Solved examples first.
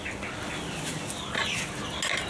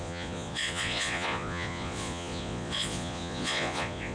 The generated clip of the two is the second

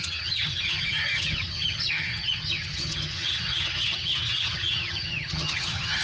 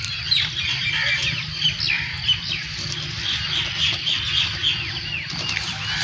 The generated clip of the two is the first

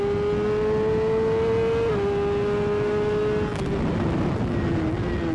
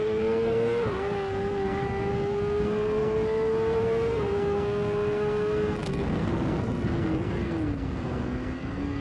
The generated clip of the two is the second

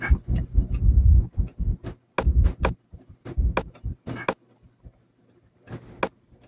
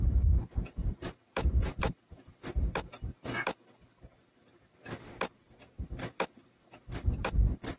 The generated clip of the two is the second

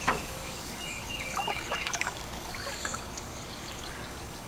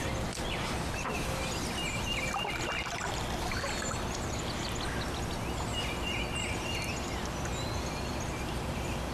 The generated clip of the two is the first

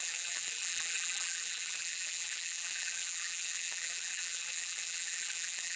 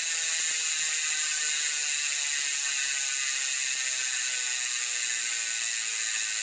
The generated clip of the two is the first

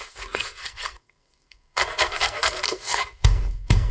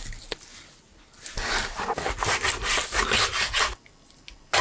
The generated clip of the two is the first